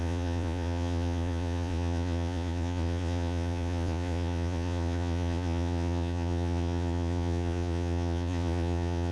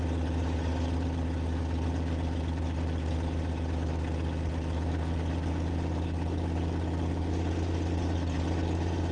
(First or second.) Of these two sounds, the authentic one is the second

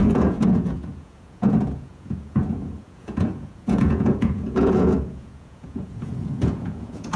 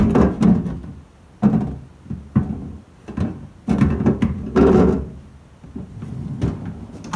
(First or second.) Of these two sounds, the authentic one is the second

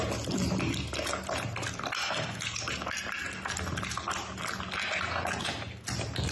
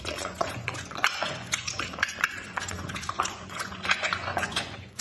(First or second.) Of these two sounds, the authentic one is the first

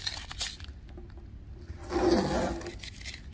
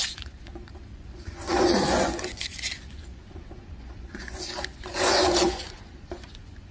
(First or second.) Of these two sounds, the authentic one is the first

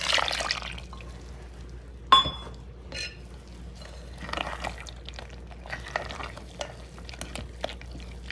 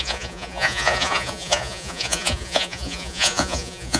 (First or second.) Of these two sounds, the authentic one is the first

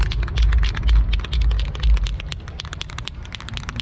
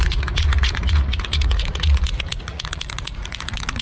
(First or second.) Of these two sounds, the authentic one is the first